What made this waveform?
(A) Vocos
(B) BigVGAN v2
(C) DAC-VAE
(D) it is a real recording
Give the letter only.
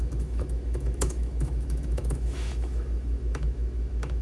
C